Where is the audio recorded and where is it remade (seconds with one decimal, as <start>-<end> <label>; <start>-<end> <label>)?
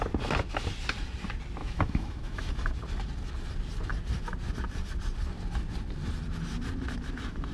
0.0-1.6 recorded; 1.6-2.5 remade; 2.5-7.5 recorded